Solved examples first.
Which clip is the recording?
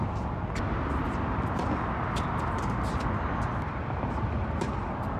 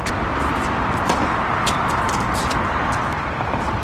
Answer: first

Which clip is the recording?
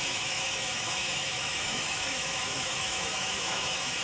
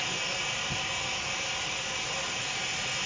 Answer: second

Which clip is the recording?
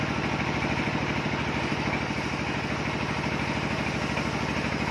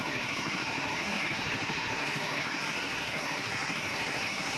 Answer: first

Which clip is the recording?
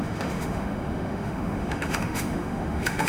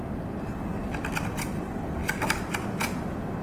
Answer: second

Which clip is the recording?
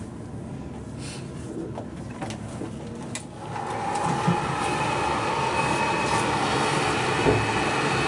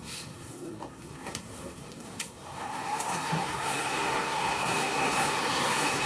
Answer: first